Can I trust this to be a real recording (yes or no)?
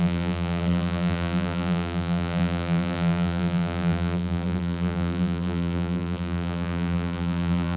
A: no